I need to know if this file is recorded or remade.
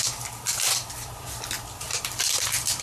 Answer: remade